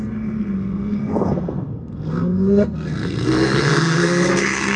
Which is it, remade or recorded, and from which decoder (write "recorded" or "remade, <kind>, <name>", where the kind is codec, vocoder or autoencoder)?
remade, codec, SNAC